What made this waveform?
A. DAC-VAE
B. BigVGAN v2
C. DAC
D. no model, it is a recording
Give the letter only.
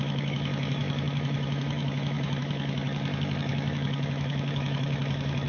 A